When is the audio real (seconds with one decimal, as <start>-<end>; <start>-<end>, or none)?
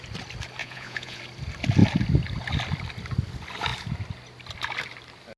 0.0-0.6; 1.2-5.4